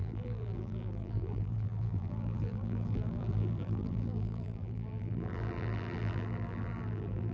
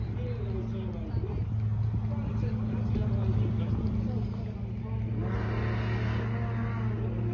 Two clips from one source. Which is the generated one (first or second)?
first